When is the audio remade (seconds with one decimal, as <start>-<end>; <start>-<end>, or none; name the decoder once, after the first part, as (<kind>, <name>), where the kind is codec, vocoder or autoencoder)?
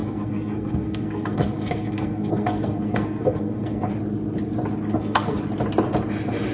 0.0-3.9 (codec, SNAC); 4.9-5.4